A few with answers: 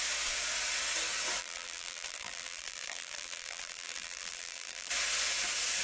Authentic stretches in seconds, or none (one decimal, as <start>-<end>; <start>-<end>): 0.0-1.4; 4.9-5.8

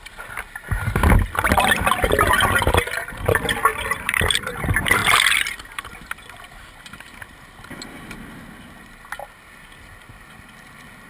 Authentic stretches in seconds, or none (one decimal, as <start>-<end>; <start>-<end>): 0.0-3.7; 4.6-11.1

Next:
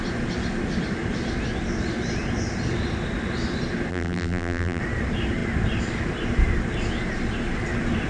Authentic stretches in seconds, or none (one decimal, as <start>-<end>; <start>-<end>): 0.0-3.9; 4.8-8.1

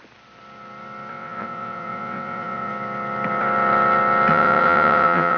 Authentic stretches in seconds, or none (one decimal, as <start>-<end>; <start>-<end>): 0.0-1.1; 2.7-4.3

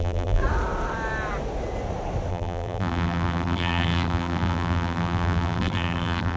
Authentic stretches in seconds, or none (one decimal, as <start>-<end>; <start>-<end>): 0.4-2.3

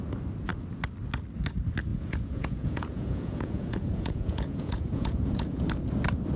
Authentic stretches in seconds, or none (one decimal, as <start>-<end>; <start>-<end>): 0.0-1.9; 5.7-6.4

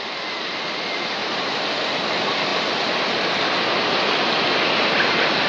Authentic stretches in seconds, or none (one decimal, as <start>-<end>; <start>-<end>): 0.0-1.2; 1.8-5.5

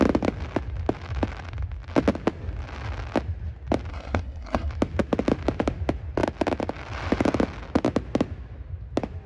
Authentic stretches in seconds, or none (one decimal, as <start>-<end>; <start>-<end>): 0.0-3.9; 4.7-9.3